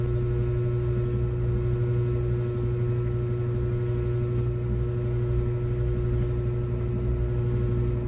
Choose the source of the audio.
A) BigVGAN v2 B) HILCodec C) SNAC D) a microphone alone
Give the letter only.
D